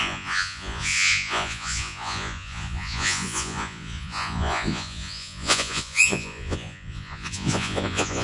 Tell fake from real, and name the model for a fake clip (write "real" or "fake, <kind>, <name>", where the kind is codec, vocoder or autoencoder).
fake, vocoder, Vocos